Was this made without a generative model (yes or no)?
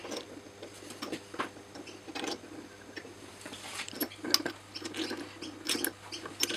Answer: yes